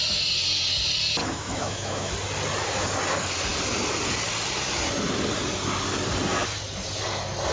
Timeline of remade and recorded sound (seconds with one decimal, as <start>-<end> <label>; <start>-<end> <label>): 0.0-1.2 recorded; 1.2-2.1 remade; 2.1-7.5 recorded